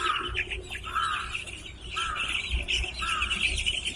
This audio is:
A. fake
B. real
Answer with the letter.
B